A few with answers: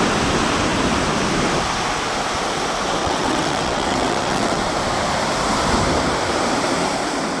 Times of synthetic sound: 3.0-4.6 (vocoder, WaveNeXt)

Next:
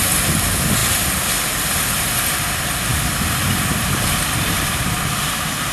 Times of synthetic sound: 0.8-1.5 (vocoder, BigVGAN v2); 2.9-4.8

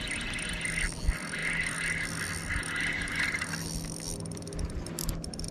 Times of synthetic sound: none

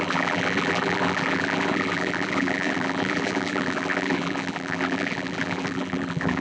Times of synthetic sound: 0.0-6.4 (vocoder, BigVGAN v2)

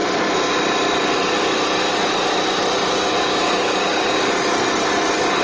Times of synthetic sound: 3.2-4.0 (codec, DAC)

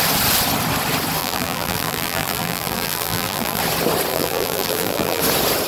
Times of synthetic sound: 1.2-3.6 (vocoder, BigVGAN v2); 4.1-5.2

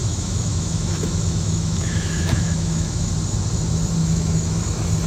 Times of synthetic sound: 0.0-3.1 (autoencoder, DAC-VAE); 4.0-4.6